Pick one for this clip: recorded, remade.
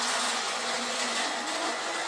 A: remade